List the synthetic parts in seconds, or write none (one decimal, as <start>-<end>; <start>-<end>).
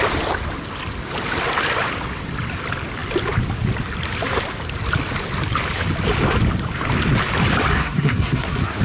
7.7-8.8